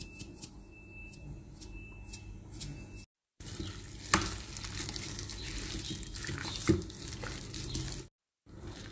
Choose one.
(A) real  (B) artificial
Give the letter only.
A